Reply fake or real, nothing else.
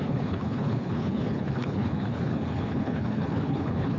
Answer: fake